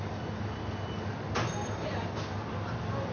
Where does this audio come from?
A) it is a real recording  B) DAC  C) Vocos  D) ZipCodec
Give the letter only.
A